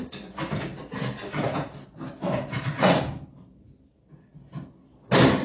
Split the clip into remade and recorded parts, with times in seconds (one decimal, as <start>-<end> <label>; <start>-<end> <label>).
0.0-5.4 recorded